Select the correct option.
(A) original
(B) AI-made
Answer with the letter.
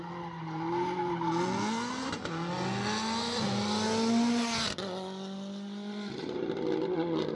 A